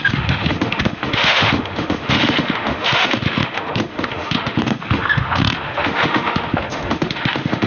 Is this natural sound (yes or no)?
no